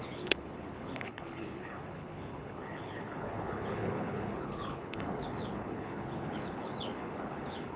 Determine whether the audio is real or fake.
fake